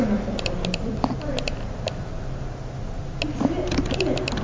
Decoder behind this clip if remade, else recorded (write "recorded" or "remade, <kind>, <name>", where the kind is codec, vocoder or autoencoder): recorded